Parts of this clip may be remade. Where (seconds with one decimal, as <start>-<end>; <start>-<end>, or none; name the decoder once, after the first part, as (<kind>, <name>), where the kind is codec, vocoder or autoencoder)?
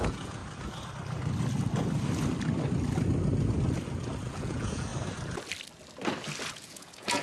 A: 0.0-0.4 (vocoder, Vocos); 4.3-4.9; 6.5-7.2